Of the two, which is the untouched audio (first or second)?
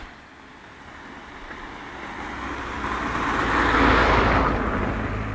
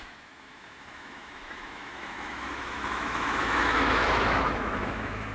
first